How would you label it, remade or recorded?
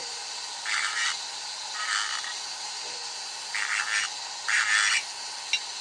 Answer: recorded